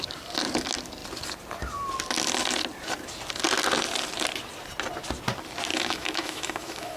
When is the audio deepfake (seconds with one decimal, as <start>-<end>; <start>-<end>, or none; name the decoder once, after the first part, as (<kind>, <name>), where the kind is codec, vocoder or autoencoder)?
5.7-7.0 (autoencoder, DAC-VAE)